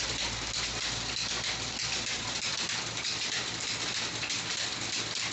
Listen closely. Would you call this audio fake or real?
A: fake